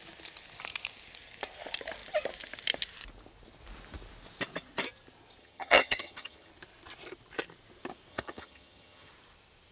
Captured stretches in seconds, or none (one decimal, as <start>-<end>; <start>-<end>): 0.0-5.4; 6.5-8.1; 9.1-9.7